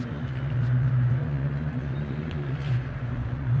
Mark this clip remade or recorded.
remade